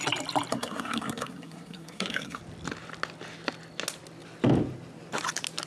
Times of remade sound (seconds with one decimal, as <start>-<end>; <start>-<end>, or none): 0.5-2.4